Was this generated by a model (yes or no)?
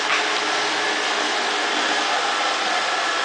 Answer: no